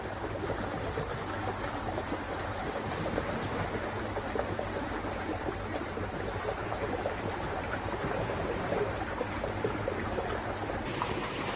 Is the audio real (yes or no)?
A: no